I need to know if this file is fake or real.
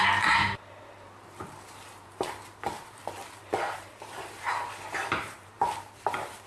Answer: fake